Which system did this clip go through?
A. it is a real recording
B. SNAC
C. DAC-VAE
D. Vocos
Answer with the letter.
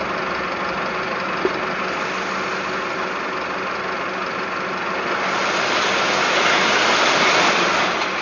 A